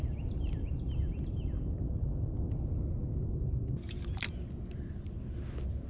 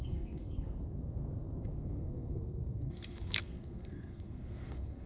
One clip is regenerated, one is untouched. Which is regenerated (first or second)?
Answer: second